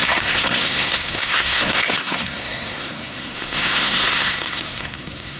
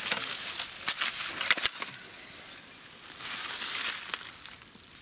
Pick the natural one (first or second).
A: second